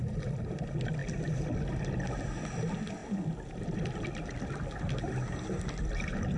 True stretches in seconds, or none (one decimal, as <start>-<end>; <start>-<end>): 0.6-6.4